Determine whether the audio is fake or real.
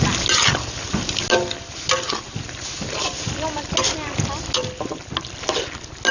real